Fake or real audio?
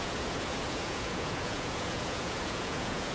fake